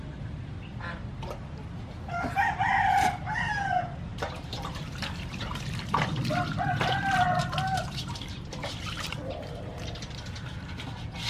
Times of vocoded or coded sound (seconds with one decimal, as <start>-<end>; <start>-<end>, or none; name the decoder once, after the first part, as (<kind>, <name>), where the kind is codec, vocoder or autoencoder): 4.1-5.7 (vocoder, BigVGAN v2)